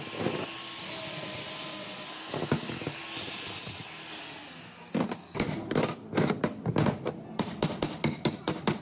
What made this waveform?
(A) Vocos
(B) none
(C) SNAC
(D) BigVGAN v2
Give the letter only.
B